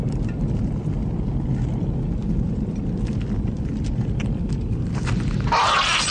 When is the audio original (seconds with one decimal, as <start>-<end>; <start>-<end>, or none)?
0.0-2.2